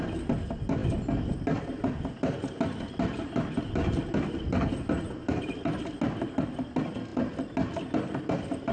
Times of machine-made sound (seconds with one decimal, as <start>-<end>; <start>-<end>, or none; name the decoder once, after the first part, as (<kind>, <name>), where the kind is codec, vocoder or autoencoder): none